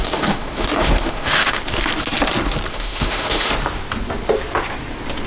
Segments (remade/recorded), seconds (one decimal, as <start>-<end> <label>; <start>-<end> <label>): 0.0-1.6 remade; 1.6-2.7 recorded; 2.7-3.5 remade; 3.5-5.3 recorded